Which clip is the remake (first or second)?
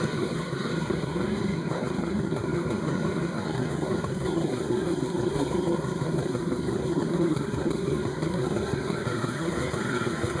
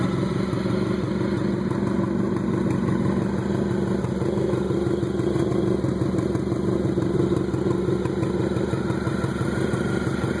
first